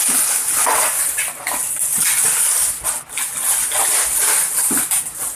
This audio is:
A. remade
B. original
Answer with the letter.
B